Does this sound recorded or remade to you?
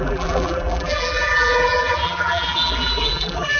remade